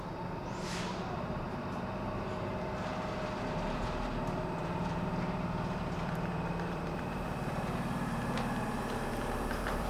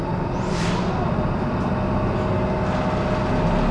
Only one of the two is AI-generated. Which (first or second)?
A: first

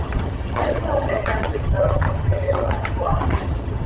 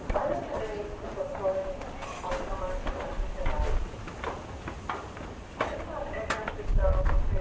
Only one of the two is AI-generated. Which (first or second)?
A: first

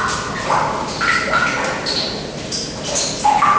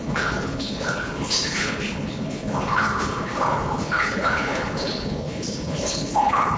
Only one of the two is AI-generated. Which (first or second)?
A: second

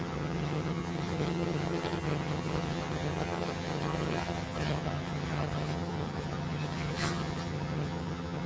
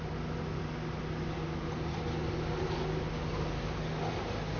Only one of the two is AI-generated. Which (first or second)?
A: first